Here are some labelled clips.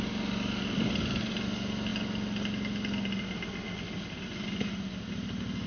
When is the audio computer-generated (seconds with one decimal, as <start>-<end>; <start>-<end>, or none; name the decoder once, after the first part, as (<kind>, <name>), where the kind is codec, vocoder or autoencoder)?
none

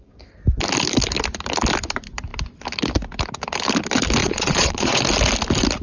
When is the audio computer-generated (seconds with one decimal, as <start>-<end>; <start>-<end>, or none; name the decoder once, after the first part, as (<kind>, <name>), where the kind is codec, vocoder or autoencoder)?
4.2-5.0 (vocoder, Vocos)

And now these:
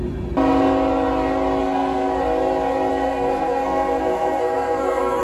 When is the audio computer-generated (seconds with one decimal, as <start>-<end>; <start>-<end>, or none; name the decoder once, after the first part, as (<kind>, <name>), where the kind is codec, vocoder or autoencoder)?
1.6-2.2 (codec, SNAC); 2.9-5.2